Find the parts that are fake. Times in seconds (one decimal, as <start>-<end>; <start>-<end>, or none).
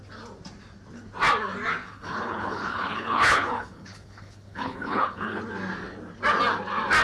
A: 1.8-5.4